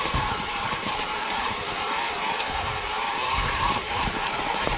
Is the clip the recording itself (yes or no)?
no